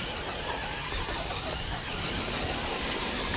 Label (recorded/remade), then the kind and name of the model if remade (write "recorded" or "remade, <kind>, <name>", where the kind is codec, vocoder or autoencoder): recorded